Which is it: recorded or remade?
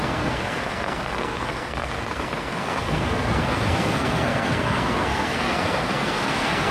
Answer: remade